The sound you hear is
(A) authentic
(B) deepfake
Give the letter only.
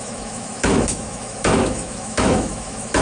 B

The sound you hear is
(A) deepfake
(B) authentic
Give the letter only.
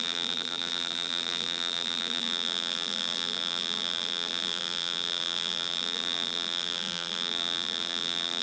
A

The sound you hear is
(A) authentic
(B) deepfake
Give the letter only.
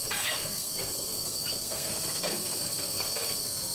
B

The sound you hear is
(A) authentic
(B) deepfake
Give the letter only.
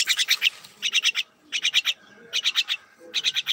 A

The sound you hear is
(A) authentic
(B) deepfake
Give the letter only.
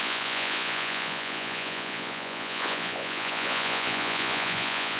B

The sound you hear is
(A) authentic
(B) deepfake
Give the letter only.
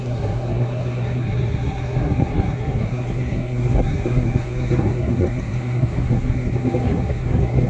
B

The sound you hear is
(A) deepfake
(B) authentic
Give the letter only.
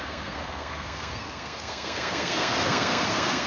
A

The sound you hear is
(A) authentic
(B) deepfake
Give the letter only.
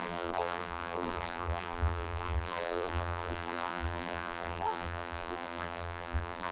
B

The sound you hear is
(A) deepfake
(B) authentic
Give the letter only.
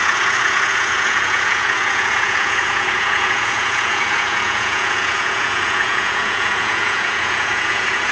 A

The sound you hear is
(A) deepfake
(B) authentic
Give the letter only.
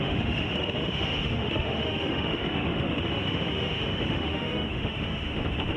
A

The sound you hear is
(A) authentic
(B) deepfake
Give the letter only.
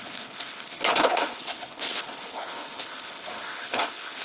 B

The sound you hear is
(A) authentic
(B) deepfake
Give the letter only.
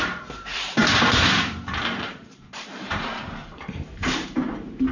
B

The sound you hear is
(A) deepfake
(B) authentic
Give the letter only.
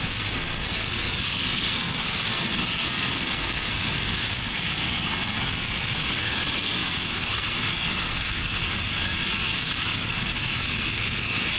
A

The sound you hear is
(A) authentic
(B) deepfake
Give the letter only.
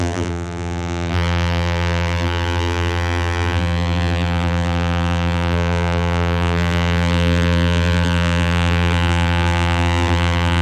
B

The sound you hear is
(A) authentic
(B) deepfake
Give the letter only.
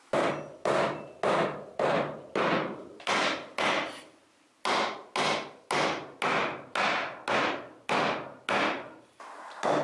A